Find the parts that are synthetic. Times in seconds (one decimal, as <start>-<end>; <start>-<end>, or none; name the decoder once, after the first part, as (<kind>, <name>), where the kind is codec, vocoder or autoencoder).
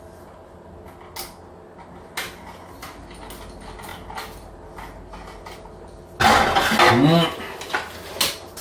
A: none